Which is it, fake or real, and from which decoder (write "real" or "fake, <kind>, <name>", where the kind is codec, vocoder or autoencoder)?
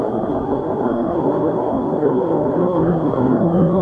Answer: fake, codec, SNAC